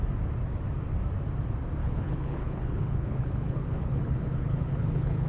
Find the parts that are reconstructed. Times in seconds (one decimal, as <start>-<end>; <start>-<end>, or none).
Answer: 1.8-5.3